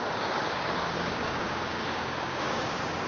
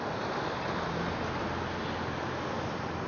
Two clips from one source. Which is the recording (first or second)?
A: second